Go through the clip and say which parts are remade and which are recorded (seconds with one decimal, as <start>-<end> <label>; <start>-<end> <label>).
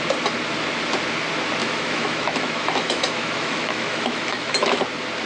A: 0.0-1.6 recorded; 1.6-4.8 remade; 4.8-5.3 recorded